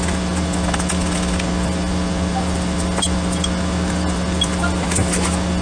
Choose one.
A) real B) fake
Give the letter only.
A